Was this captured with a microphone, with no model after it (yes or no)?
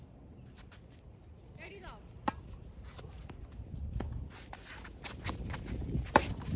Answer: yes